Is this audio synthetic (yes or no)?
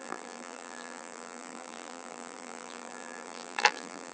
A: yes